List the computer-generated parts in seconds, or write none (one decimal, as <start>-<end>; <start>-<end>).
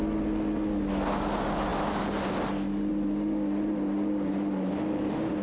none